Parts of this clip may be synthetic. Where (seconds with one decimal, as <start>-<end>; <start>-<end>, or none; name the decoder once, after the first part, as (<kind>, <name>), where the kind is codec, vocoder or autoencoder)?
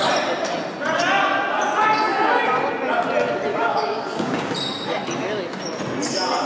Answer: 3.5-4.5 (codec, DAC)